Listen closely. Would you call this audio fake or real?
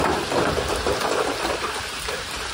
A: real